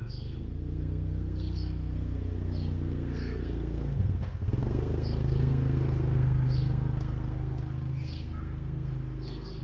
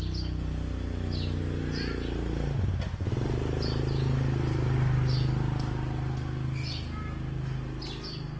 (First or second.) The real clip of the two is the second